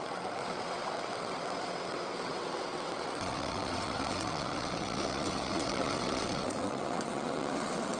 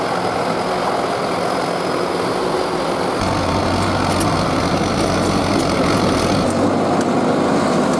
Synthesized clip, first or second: first